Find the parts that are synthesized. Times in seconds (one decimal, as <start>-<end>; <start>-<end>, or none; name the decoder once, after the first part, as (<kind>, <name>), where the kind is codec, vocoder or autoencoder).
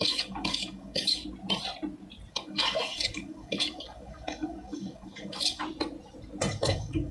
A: 0.0-1.2 (codec, DAC); 2.3-5.6; 6.5-7.1